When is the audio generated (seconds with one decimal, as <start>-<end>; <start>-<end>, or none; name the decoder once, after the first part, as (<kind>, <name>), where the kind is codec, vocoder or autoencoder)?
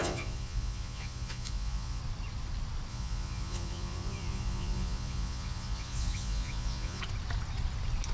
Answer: 0.0-2.0 (vocoder, Vocos); 2.9-7.0